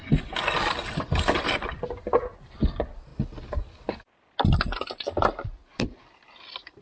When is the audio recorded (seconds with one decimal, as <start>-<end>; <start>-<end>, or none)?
0.0-6.8